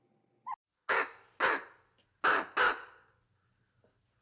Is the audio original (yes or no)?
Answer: yes